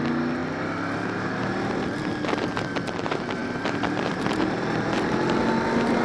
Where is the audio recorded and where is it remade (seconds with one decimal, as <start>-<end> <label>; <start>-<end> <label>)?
0.0-3.4 recorded; 3.4-5.4 remade; 5.4-6.0 recorded